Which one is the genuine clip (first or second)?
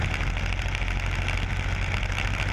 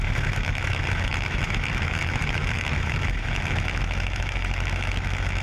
first